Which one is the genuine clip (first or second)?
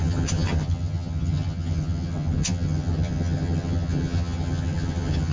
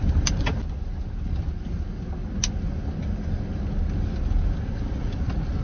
second